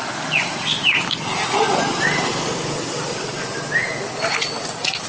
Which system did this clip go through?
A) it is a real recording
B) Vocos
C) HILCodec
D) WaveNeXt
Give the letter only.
A